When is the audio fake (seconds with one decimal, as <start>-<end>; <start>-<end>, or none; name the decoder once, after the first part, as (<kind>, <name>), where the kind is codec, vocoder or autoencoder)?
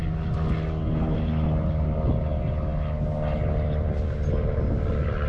none